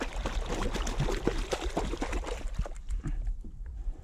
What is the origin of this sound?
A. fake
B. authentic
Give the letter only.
B